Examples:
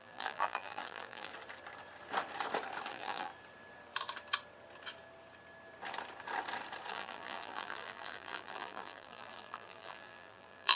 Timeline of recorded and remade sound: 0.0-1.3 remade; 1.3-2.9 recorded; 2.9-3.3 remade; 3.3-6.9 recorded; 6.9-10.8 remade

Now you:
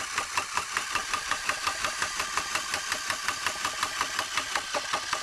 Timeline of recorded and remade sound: 0.0-1.0 recorded; 1.0-2.2 remade; 2.2-5.2 recorded

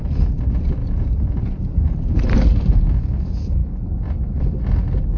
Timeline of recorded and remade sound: 0.0-0.8 recorded; 0.8-2.2 remade; 2.2-5.2 recorded

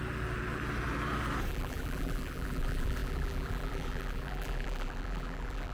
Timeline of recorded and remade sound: 0.0-1.5 recorded; 1.5-5.7 remade